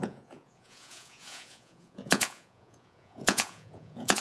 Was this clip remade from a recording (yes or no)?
yes